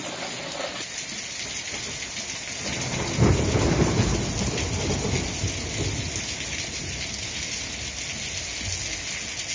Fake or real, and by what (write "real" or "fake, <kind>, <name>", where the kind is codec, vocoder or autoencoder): real